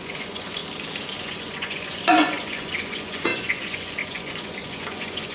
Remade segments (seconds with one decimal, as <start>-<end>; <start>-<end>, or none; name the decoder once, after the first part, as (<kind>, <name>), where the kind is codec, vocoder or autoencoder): 0.0-0.6 (vocoder, Vocos); 1.2-5.3